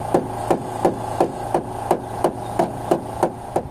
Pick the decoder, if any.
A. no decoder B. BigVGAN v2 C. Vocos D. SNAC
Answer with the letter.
A